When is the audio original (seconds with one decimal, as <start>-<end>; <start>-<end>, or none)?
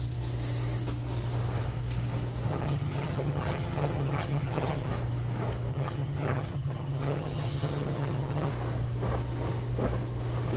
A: 0.0-2.5; 4.9-5.7; 8.5-10.6